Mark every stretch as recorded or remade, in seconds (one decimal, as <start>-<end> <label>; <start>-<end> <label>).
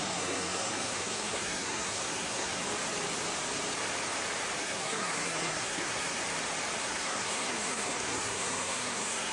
0.0-2.6 remade; 2.6-4.6 recorded; 4.6-6.2 remade; 6.2-6.8 recorded; 6.8-9.3 remade